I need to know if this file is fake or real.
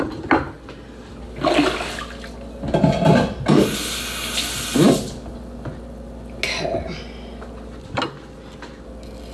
real